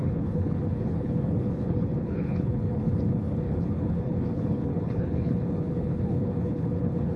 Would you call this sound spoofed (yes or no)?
yes